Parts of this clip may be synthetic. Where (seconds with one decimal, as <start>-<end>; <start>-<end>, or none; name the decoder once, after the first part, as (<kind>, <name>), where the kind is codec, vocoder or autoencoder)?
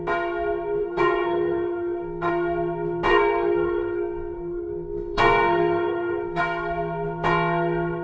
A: 0.8-2.3 (codec, SNAC); 3.1-6.4